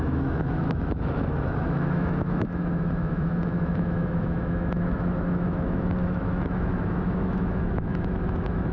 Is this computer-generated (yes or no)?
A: yes